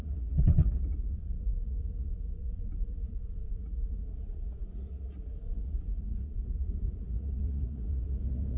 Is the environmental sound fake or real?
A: fake